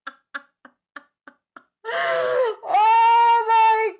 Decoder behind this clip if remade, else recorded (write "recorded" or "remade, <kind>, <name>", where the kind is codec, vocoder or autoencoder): recorded